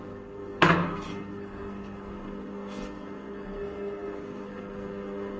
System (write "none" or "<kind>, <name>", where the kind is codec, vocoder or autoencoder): codec, SNAC